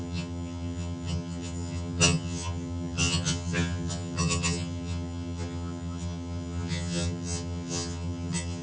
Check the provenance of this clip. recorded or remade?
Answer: remade